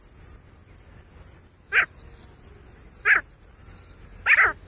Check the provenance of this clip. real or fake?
real